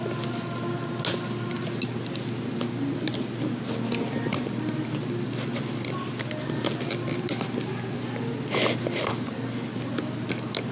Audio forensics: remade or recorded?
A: recorded